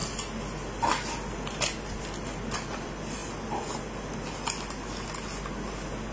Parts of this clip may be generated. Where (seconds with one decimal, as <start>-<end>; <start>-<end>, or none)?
none